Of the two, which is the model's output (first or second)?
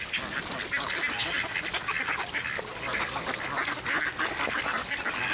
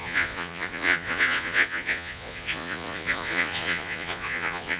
second